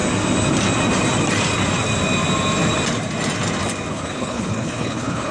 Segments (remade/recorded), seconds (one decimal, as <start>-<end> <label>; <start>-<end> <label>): 0.0-3.9 recorded; 3.9-5.3 remade